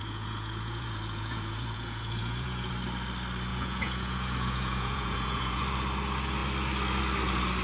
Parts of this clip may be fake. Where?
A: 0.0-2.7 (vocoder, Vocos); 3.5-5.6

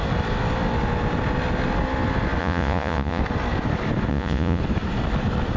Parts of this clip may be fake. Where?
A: 2.4-3.2 (vocoder, Vocos); 4.1-4.6